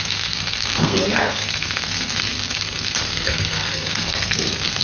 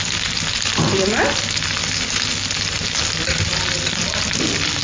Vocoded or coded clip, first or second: first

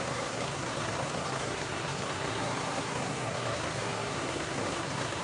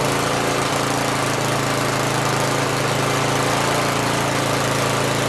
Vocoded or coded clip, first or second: first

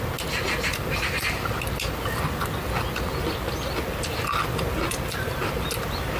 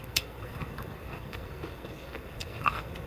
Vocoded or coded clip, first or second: second